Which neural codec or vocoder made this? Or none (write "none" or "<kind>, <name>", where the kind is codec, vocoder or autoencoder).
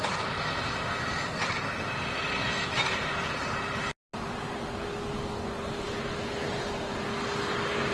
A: none